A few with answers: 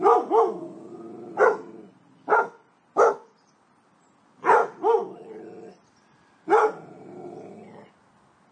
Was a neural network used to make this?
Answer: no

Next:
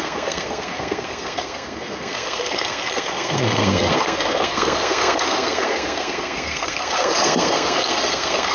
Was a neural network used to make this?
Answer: yes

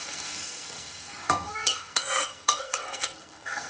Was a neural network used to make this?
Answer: yes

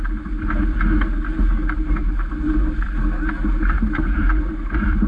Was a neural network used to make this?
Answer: no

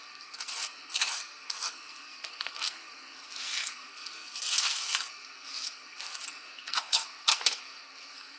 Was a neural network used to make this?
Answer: yes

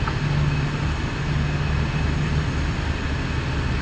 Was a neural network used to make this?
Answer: no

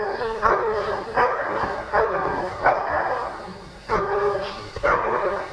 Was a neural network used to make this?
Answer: yes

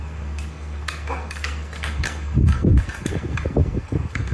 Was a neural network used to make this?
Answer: yes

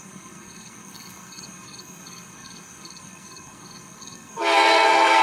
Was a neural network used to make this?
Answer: yes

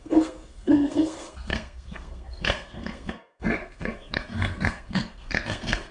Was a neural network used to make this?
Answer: yes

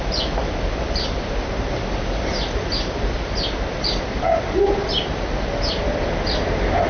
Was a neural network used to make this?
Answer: no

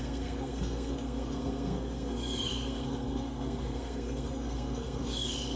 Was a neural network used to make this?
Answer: yes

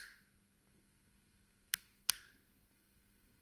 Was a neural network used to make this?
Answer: yes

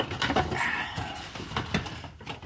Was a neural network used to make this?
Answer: no